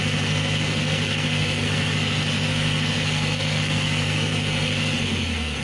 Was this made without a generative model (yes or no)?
no